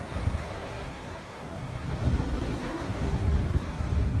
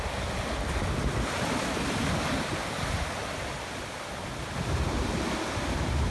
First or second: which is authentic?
second